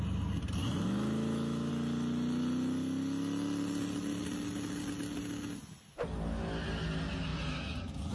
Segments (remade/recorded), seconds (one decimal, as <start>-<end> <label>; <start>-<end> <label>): 0.0-0.6 recorded; 0.6-1.7 remade; 1.7-8.1 recorded